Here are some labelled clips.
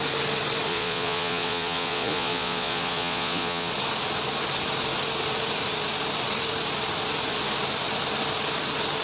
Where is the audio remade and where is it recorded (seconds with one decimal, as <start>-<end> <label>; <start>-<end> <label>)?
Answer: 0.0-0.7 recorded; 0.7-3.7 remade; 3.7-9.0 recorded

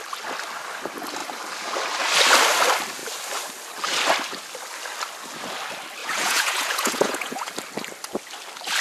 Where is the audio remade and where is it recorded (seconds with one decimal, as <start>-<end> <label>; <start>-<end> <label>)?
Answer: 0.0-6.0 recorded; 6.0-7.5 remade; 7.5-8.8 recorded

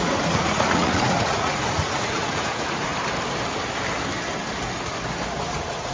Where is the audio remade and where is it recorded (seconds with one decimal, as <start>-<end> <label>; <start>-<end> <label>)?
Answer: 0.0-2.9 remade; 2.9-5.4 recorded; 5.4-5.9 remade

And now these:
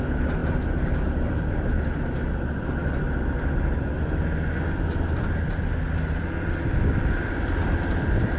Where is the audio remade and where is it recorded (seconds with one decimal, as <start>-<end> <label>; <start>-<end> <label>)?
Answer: 0.0-8.4 recorded

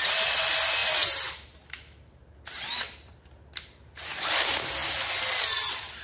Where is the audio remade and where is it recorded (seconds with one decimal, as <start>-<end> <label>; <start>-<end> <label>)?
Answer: 0.0-6.0 recorded

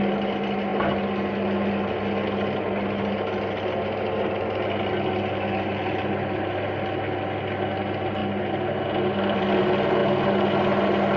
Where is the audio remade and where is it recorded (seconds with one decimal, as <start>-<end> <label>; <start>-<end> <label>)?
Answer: 0.0-11.2 recorded